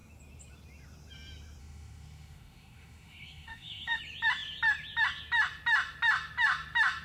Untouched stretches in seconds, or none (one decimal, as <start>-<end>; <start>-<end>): 0.0-1.6; 4.0-7.0